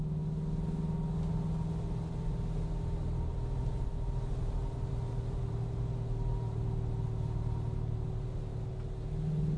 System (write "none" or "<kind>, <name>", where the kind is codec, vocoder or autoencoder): none